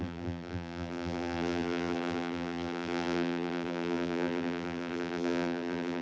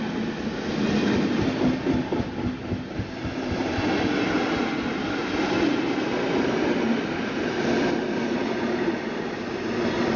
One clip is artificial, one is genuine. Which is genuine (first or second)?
second